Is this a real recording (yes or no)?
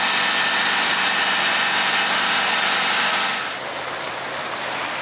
yes